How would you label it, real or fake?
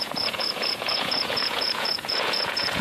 fake